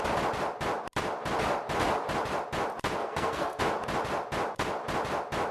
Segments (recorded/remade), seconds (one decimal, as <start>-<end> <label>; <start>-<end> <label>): 0.0-3.0 recorded; 3.0-3.6 remade; 3.6-5.5 recorded